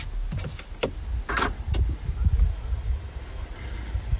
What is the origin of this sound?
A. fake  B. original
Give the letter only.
B